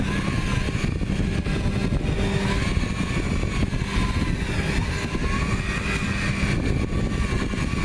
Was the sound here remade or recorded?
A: recorded